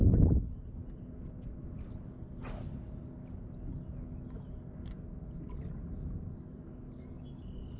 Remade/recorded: recorded